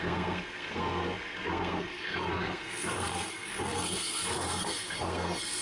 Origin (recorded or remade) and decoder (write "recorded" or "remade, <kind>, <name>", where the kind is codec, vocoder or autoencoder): remade, codec, SNAC